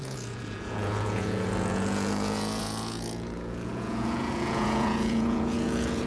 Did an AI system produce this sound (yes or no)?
yes